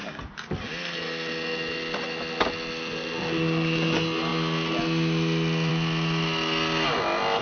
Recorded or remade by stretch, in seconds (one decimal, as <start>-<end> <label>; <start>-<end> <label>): 0.0-7.4 recorded